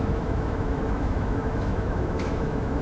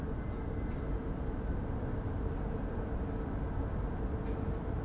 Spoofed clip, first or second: first